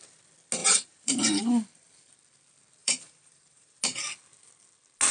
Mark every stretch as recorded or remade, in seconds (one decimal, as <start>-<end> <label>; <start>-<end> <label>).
0.0-0.6 recorded; 0.6-1.4 remade; 1.4-2.8 recorded; 2.8-3.7 remade; 3.7-5.1 recorded